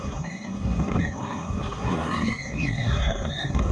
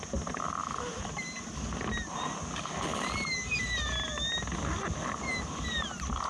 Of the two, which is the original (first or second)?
second